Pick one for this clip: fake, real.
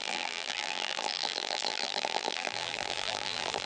fake